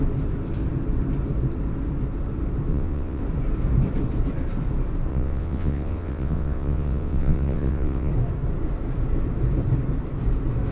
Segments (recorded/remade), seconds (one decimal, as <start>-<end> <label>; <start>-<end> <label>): 0.0-2.7 recorded; 2.7-3.2 remade; 3.2-5.1 recorded; 5.1-8.1 remade; 8.1-10.7 recorded